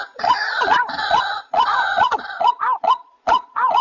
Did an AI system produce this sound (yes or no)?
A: yes